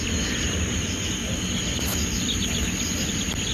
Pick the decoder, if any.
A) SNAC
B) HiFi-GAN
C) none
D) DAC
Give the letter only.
C